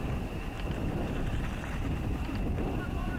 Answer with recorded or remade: remade